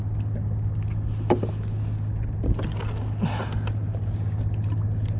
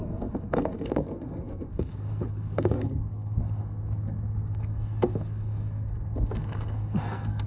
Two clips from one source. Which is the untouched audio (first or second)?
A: first